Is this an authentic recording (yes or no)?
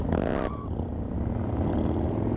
yes